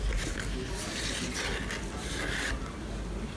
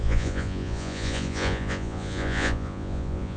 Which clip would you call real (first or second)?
first